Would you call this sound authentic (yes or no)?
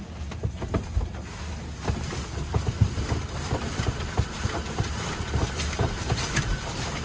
yes